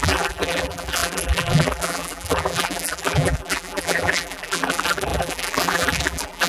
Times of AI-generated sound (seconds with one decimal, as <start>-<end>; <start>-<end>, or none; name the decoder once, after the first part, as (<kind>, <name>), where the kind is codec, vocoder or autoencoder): 0.0-6.5 (vocoder, BigVGAN v2)